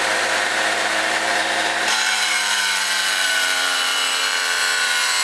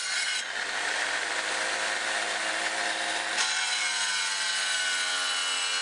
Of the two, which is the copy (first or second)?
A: first